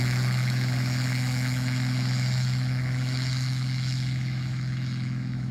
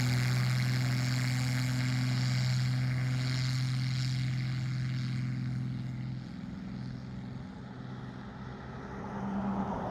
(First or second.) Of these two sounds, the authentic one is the second